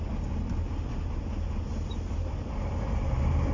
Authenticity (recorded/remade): recorded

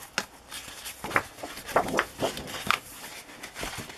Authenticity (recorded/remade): recorded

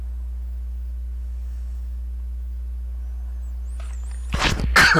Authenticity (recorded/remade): recorded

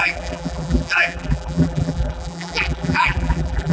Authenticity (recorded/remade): remade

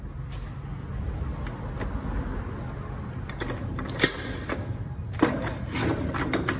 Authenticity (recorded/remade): recorded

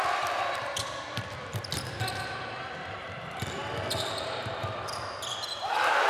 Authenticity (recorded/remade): remade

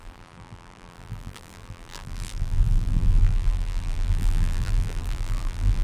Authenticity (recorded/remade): remade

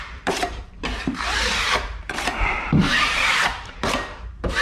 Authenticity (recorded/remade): remade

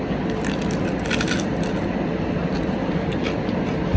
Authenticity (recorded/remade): remade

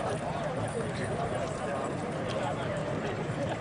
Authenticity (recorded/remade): remade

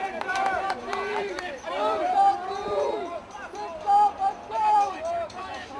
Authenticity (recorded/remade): remade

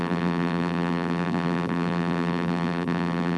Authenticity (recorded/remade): remade